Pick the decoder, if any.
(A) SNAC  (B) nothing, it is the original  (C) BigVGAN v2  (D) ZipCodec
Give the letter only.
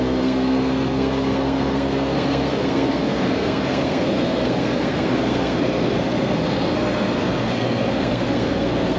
A